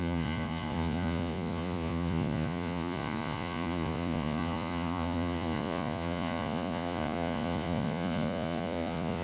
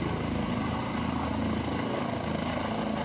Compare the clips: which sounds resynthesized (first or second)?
first